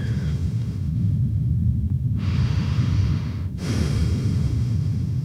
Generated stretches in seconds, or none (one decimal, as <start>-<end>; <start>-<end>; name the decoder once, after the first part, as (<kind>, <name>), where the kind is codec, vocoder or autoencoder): 0.0-5.2 (autoencoder, DAC-VAE)